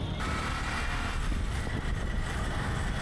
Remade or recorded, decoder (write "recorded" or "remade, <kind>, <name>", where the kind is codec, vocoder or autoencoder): recorded